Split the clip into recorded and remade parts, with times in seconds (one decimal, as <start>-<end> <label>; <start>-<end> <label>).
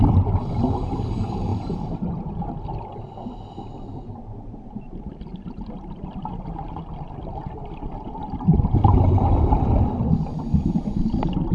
0.0-1.5 recorded; 1.5-2.8 remade; 2.8-5.3 recorded; 5.3-6.3 remade; 6.3-11.5 recorded